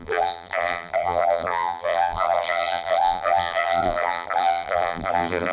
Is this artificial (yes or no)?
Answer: yes